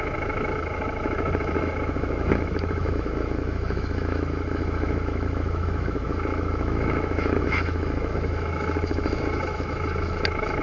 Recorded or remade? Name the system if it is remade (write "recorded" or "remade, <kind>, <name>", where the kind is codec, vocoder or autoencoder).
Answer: remade, autoencoder, DAC-VAE